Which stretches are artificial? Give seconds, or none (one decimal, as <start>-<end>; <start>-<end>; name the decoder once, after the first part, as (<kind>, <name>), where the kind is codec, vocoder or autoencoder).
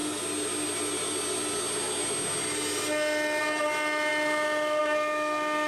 none